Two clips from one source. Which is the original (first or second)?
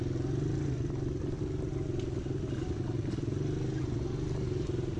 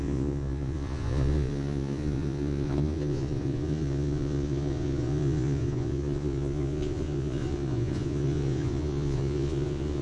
first